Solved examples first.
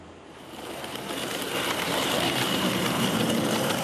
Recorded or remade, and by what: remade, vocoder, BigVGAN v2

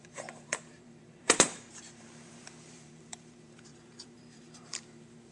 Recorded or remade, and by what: remade, vocoder, BigVGAN v2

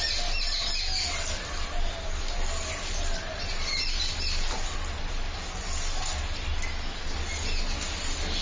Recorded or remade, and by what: recorded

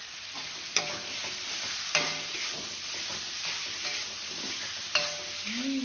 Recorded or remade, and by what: recorded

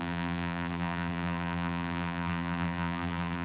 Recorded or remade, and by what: remade, vocoder, BigVGAN v2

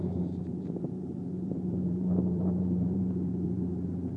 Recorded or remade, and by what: remade, vocoder, BigVGAN v2